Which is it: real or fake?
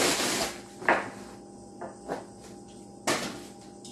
real